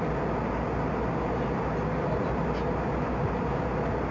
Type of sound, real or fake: real